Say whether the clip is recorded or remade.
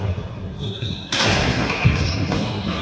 remade